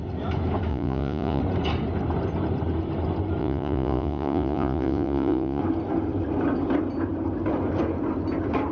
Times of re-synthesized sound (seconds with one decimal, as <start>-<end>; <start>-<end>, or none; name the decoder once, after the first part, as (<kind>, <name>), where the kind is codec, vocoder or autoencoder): 0.7-1.4 (vocoder, Vocos); 3.4-5.6